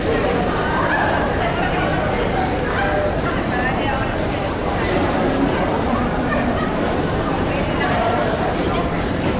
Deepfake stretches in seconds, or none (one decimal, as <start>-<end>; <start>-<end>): 0.0-1.9; 3.1-9.4